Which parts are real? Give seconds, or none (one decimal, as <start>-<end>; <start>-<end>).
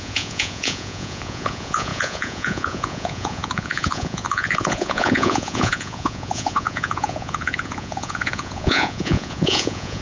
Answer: none